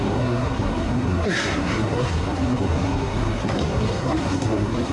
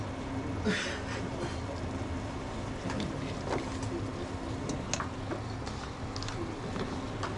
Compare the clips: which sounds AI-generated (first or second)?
first